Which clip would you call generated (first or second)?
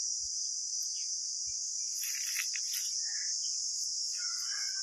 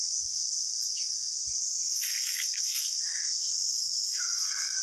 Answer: second